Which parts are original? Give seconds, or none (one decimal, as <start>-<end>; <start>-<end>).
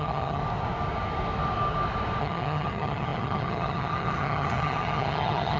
0.4-2.2